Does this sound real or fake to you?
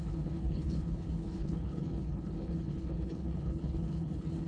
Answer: fake